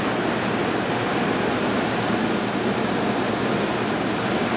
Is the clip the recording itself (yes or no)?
yes